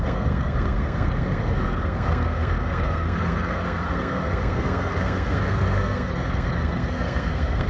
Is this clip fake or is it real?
fake